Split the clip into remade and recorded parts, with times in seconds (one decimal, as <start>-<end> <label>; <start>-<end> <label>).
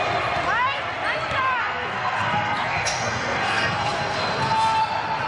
0.0-1.6 recorded; 1.6-4.8 remade; 4.8-5.3 recorded